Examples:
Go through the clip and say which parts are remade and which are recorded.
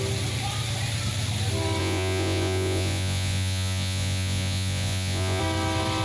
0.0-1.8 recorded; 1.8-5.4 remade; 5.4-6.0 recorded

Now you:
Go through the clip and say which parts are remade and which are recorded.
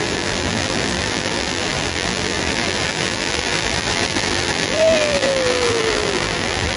0.0-6.8 remade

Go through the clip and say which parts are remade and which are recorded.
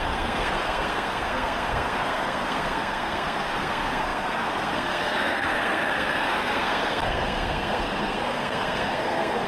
0.0-9.5 remade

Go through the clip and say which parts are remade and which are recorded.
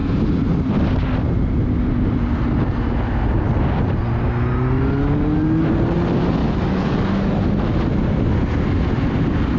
0.0-6.4 recorded; 6.4-7.4 remade; 7.4-9.6 recorded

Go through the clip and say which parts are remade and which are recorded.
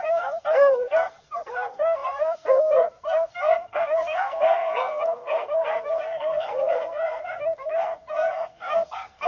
0.0-9.3 remade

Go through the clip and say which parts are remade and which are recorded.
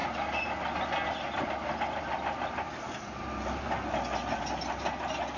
0.0-5.4 recorded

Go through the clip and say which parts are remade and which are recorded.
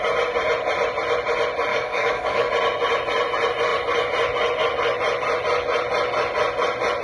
0.0-1.7 recorded; 1.7-2.5 remade; 2.5-7.0 recorded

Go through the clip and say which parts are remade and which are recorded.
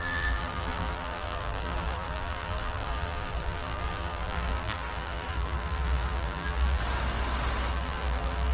0.0-6.8 remade; 6.8-7.7 recorded; 7.7-8.5 remade